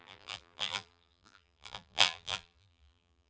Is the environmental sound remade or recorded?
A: remade